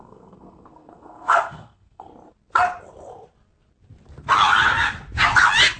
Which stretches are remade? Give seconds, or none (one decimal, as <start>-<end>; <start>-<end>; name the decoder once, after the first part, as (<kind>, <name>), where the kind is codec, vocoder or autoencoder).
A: 0.0-2.1 (codec, SNAC)